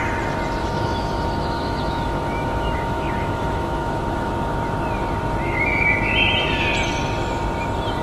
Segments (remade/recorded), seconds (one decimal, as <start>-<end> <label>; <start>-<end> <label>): 0.0-0.6 recorded; 0.6-4.3 remade; 4.3-8.0 recorded